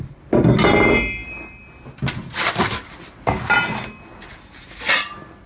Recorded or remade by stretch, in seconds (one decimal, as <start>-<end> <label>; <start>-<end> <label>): 0.0-5.5 recorded